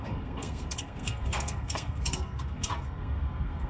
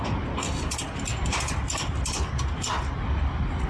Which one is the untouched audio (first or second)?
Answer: second